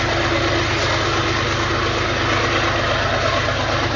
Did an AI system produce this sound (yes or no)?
no